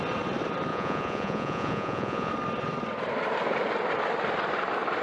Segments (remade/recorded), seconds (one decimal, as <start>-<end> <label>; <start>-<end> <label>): 0.0-0.7 recorded; 0.7-2.3 remade; 2.3-5.0 recorded

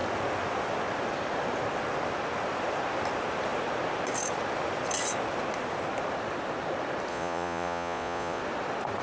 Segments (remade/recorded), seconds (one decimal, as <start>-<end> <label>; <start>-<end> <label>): 0.0-7.1 recorded; 7.1-8.4 remade; 8.4-9.0 recorded

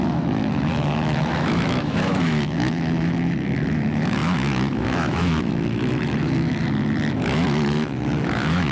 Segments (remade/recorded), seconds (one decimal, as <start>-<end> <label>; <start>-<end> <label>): 0.0-6.6 remade; 6.6-7.1 recorded; 7.1-8.7 remade

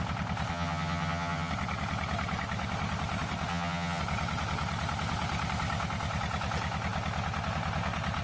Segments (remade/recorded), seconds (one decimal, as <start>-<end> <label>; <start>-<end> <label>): 0.0-0.5 recorded; 0.5-1.5 remade; 1.5-3.5 recorded; 3.5-4.0 remade; 4.0-8.2 recorded

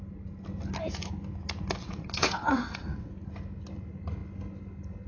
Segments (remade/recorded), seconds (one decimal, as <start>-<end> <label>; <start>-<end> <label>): 0.0-1.8 recorded; 1.8-3.1 remade; 3.1-5.1 recorded

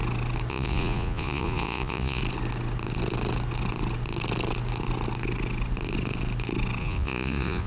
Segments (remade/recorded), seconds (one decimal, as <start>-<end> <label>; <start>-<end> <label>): 0.0-0.5 recorded; 0.5-2.2 remade; 2.2-6.8 recorded; 6.8-7.7 remade